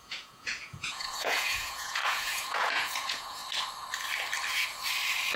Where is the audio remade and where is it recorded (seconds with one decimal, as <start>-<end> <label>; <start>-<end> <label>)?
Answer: 0.0-3.4 remade; 3.4-5.4 recorded